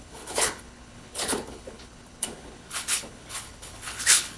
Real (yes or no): no